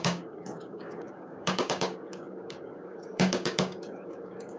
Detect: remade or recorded remade